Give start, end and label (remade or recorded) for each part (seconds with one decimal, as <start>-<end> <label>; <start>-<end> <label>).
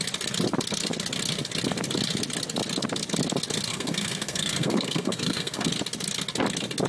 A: 0.0-3.7 recorded; 3.7-5.7 remade; 5.7-6.9 recorded